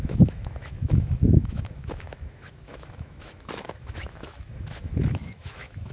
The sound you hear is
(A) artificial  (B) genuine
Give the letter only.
A